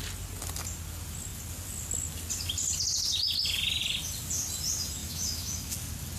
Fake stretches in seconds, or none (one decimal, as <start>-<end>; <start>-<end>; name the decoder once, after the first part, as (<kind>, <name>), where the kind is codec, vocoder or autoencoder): 5.0-5.7 (autoencoder, DAC-VAE)